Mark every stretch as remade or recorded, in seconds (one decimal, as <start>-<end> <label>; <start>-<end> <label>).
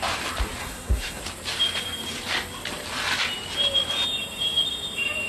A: 0.0-0.6 recorded; 0.6-1.2 remade; 1.2-5.3 recorded